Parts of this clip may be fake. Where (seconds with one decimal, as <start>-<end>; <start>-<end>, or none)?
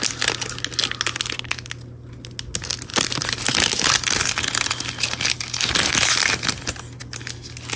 none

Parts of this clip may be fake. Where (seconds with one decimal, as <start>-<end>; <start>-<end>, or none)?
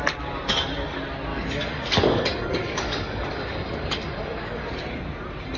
1.3-4.7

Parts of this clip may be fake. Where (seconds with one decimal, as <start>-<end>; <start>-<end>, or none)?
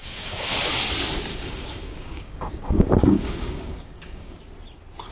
0.0-0.6; 1.3-4.4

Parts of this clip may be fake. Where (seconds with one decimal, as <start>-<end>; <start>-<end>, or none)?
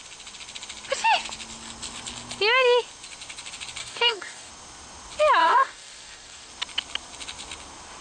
3.8-4.5; 5.4-6.5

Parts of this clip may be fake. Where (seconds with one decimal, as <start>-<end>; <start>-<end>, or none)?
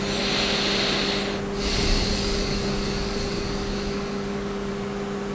1.7-4.7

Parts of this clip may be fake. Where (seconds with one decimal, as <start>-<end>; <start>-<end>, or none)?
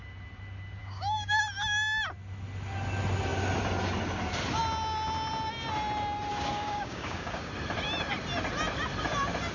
0.8-1.4; 6.3-7.5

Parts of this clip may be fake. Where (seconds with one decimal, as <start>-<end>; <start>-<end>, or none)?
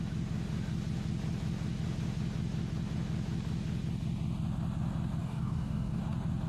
5.2-6.0